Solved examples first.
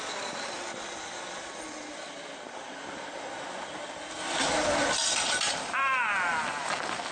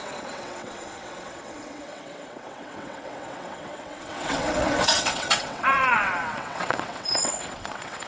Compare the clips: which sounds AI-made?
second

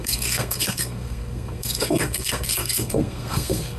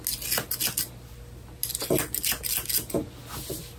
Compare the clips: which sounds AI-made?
first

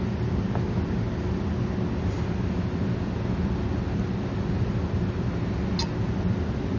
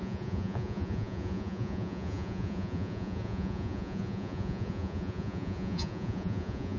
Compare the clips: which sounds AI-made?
second